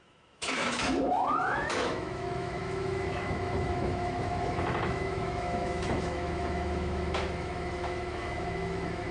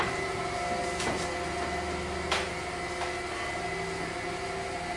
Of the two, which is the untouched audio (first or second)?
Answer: second